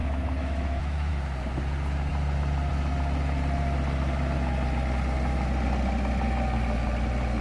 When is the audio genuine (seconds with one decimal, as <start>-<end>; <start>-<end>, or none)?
1.1-7.4